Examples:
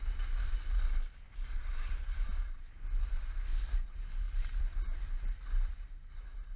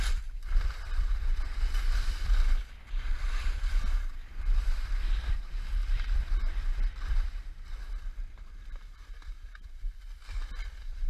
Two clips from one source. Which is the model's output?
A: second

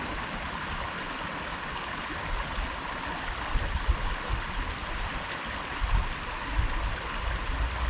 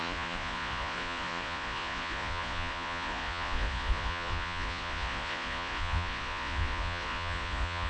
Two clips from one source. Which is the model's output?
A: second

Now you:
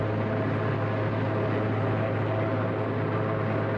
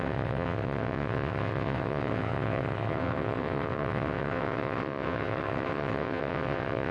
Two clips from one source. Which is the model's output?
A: second